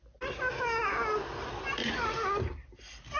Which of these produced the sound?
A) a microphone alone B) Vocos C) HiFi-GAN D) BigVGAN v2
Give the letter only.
A